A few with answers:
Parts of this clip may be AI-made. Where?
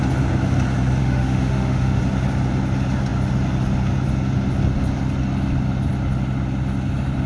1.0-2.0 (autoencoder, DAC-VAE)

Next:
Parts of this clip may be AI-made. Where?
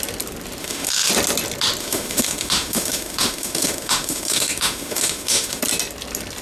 0.6-1.1 (autoencoder, DAC-VAE); 1.8-5.6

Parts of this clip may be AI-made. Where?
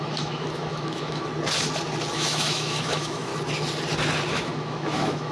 0.0-1.3 (autoencoder, DAC-VAE); 2.1-3.3; 4.3-5.3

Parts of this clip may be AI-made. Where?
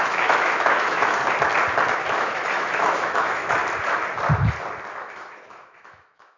0.0-1.2 (autoencoder, DAC-VAE); 1.9-3.6; 4.9-6.4